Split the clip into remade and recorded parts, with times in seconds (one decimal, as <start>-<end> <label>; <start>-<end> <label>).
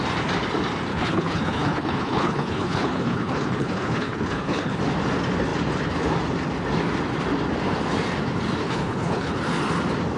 0.0-0.9 recorded; 0.9-4.8 remade; 4.8-8.6 recorded; 8.6-9.4 remade; 9.4-10.2 recorded